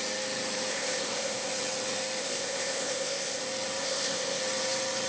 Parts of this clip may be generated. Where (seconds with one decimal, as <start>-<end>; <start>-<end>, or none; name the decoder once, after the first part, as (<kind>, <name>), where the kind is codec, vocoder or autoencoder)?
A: 0.7-1.5 (codec, ZipCodec); 2.2-3.4; 3.8-4.4